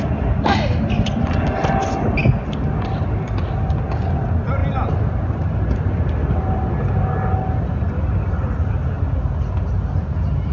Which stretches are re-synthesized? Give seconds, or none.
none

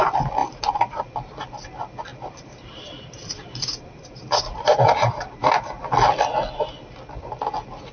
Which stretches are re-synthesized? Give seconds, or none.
0.4-1.0 (vocoder, BigVGAN v2); 2.1-5.8

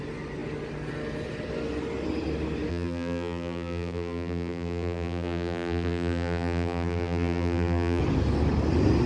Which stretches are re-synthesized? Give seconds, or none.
2.7-8.0 (vocoder, BigVGAN v2)

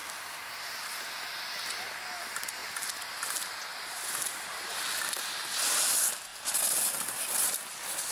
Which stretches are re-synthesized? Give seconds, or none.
none

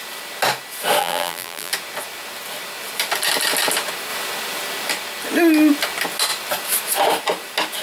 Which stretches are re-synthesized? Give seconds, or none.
1.0-1.7 (vocoder, BigVGAN v2)

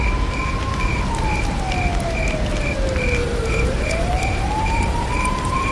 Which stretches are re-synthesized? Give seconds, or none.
3.2-5.7 (vocoder, BigVGAN v2)